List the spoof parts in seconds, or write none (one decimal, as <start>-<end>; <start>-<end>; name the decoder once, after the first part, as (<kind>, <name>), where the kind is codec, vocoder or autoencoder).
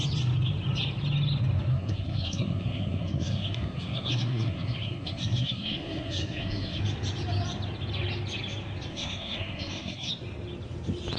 1.7-6.8 (codec, SNAC); 8.9-10.1